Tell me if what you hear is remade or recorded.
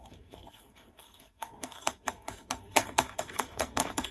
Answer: remade